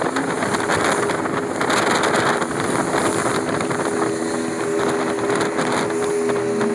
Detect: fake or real real